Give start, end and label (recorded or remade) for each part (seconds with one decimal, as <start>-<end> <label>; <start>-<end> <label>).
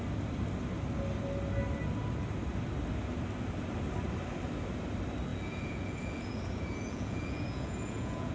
0.0-5.3 recorded; 5.3-8.3 remade